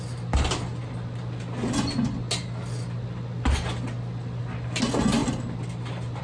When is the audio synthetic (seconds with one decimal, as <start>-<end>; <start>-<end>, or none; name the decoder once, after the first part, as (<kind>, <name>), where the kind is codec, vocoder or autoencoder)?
none